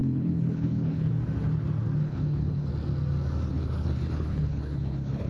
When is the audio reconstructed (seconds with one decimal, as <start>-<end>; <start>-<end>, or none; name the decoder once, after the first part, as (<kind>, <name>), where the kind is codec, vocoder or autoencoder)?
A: 0.0-1.1 (codec, HILCodec); 2.0-2.7; 3.5-5.3